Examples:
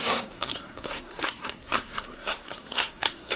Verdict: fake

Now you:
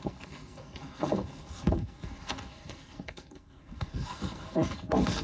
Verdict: fake